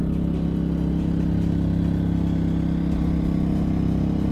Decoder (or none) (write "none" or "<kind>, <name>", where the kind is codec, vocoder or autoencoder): none